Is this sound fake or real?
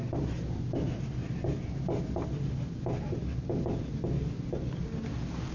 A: real